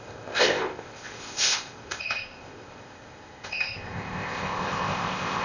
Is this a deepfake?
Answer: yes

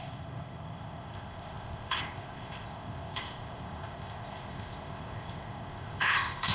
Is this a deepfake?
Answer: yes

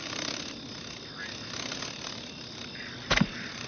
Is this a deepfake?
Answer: no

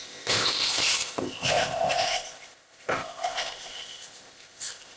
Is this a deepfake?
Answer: yes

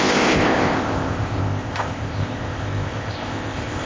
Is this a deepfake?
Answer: yes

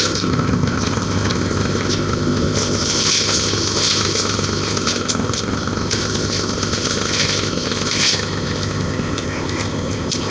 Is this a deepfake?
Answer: yes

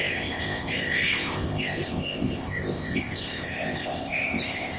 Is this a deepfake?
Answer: yes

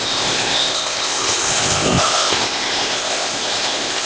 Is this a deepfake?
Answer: yes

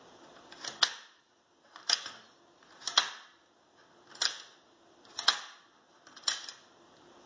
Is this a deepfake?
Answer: no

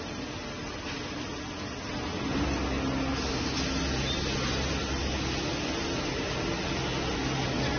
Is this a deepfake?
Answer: no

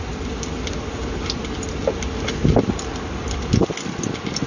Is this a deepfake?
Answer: no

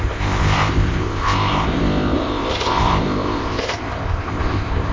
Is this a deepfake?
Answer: yes